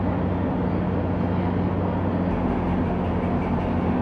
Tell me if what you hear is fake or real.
real